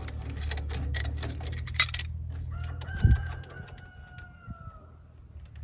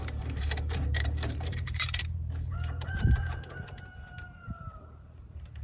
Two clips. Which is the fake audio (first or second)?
second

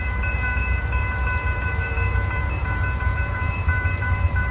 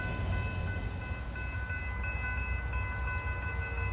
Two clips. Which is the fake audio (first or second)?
first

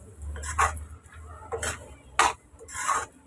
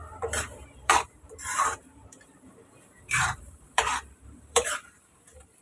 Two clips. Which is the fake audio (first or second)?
second